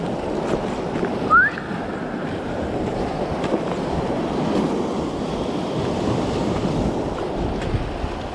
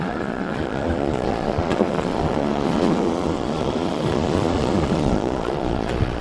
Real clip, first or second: first